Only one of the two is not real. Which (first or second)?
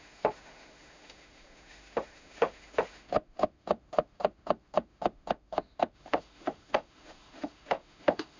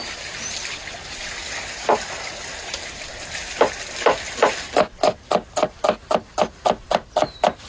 first